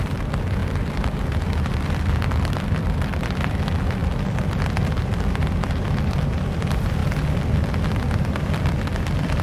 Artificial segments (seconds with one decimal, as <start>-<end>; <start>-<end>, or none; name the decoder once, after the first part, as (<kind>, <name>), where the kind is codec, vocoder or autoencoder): 0.0-7.0 (vocoder, BigVGAN v2); 7.9-9.4